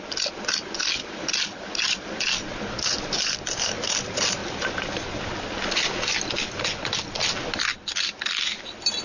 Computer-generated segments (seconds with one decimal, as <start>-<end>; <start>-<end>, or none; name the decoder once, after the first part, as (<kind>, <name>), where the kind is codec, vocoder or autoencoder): none

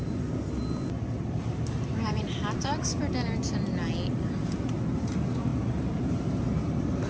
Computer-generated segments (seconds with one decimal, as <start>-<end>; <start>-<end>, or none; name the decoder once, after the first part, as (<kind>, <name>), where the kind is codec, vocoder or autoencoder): 1.9-3.0 (vocoder, BigVGAN v2); 5.5-7.1

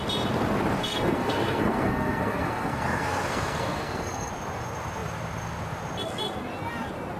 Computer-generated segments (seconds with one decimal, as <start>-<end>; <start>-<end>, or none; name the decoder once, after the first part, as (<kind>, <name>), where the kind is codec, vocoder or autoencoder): 0.8-4.3 (codec, SNAC)

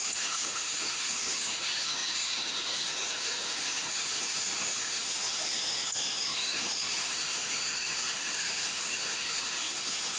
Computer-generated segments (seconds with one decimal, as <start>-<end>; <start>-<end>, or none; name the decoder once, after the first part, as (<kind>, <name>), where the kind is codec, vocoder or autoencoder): 0.0-10.2 (autoencoder, DAC-VAE)